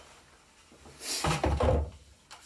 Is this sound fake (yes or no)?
no